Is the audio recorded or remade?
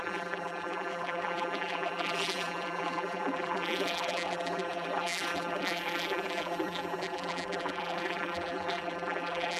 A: remade